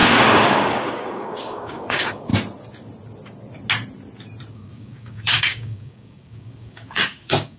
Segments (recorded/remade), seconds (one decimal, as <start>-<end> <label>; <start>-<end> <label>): 0.0-2.3 remade; 2.3-4.5 recorded; 4.5-7.6 remade